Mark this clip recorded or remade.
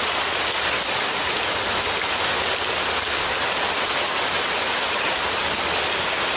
recorded